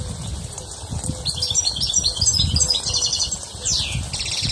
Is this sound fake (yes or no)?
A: no